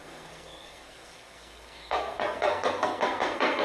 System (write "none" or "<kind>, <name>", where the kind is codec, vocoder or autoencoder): codec, SNAC